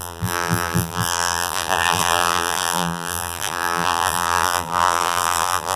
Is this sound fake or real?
fake